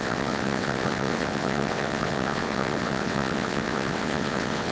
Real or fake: fake